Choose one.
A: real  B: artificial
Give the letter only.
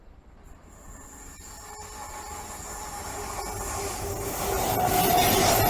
A